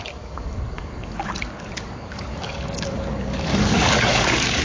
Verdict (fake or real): fake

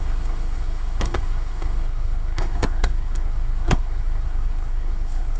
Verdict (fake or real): fake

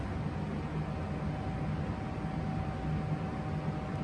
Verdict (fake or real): real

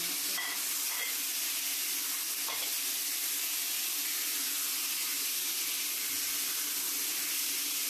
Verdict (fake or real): real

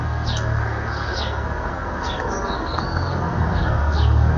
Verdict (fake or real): fake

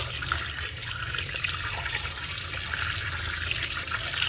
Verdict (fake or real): real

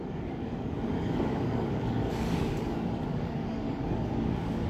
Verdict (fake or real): fake